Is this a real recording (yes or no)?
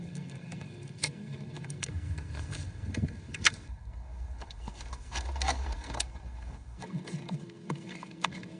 no